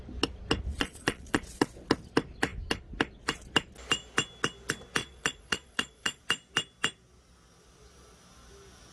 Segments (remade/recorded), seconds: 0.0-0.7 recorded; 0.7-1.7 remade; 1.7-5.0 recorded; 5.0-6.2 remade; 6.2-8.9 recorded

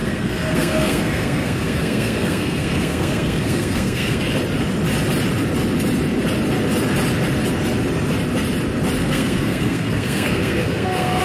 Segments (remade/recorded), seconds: 0.0-4.2 remade; 4.2-9.0 recorded; 9.0-11.2 remade

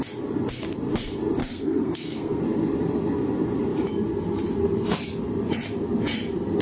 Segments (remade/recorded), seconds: 0.0-1.4 recorded; 1.4-2.4 remade; 2.4-6.6 recorded

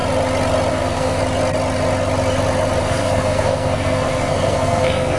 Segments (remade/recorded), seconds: 0.0-0.7 recorded; 0.7-1.2 remade; 1.2-2.8 recorded; 2.8-5.2 remade

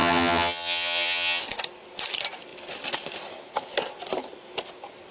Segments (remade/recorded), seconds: 0.0-1.4 remade; 1.4-5.1 recorded

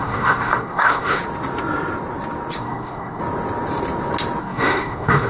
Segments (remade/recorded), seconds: 0.0-1.2 remade; 1.2-2.6 recorded; 2.6-3.2 remade; 3.2-4.4 recorded; 4.4-5.3 remade